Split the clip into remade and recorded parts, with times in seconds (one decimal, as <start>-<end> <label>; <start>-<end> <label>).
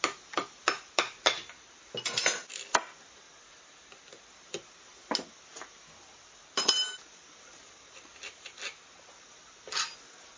0.0-10.4 recorded